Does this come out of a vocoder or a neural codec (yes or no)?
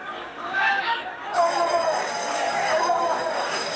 yes